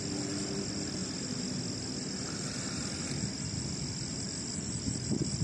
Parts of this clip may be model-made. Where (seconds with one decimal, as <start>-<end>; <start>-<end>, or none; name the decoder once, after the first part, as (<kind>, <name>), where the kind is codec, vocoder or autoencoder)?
none